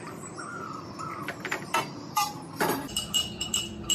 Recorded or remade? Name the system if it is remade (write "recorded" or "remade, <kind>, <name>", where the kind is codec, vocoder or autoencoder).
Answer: remade, vocoder, BigVGAN v2